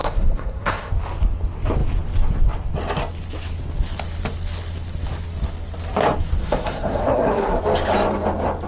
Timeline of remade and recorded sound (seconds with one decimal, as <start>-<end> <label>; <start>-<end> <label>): 0.0-0.9 remade; 0.9-6.4 recorded; 6.4-7.6 remade; 7.6-8.7 recorded